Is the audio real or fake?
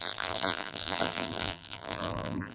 fake